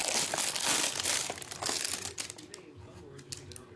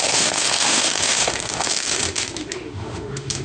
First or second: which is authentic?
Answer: first